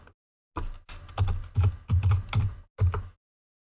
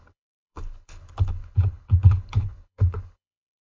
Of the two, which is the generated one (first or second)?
second